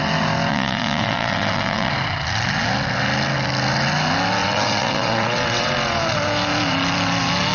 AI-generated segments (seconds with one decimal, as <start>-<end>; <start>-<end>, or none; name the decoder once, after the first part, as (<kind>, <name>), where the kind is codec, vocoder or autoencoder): 0.5-1.9 (vocoder, WaveNeXt); 4.4-5.7